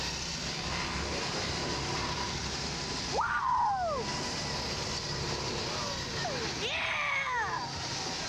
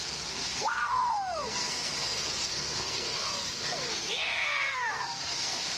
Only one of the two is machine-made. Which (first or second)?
second